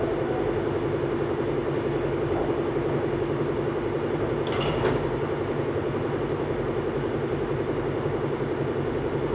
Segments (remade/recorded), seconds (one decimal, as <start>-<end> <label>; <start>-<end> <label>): 0.0-9.3 recorded